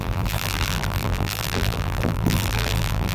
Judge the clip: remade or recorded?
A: remade